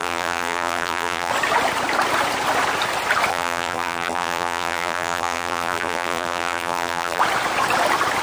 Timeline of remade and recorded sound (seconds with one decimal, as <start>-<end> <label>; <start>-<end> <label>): 0.0-1.3 remade; 1.3-3.3 recorded; 3.3-7.2 remade; 7.2-8.2 recorded